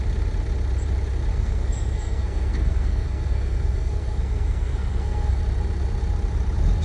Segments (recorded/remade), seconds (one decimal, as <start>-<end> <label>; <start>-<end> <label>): 0.0-1.3 recorded; 1.3-5.4 remade; 5.4-6.8 recorded